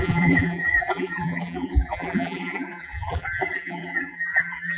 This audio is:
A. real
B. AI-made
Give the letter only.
B